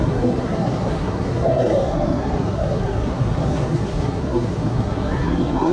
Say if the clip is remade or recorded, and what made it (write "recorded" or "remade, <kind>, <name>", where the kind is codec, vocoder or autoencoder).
remade, codec, SNAC